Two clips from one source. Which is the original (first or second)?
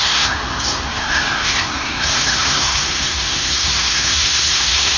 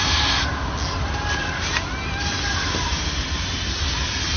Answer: second